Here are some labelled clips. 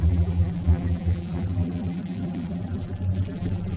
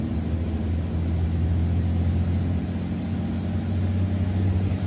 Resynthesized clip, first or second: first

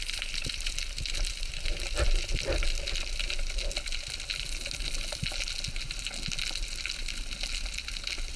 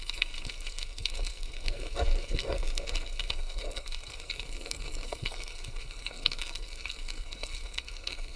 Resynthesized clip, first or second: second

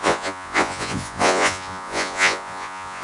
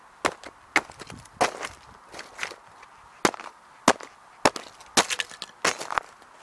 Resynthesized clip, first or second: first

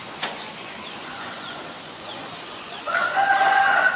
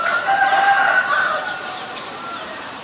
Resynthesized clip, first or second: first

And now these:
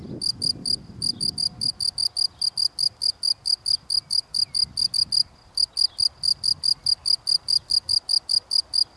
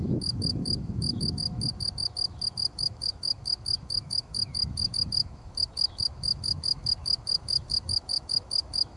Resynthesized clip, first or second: second